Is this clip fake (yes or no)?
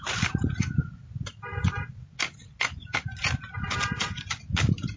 no